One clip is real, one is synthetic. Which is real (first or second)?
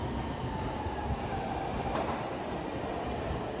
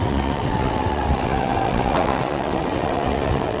first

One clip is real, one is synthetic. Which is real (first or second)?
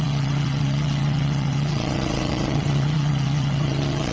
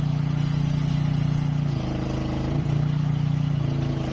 second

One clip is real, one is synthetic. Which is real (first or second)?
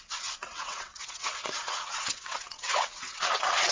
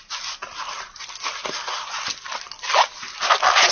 second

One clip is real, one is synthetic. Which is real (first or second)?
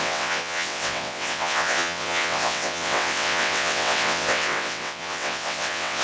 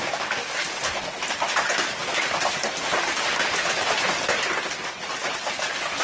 second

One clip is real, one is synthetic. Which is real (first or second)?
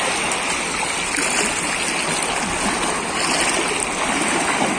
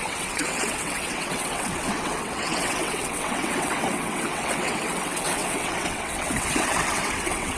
first